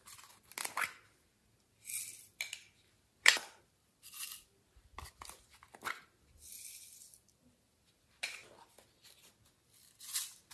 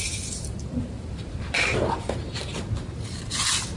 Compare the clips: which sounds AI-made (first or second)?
second